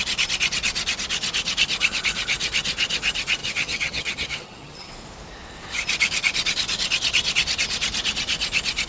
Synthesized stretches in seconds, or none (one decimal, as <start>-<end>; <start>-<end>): 3.4-4.9